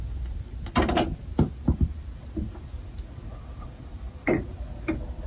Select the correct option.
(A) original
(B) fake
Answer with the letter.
A